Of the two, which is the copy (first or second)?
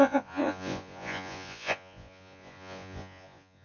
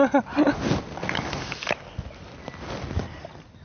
first